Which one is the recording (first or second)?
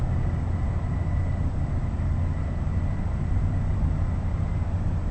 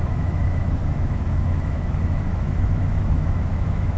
first